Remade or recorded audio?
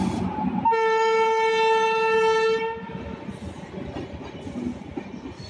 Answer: recorded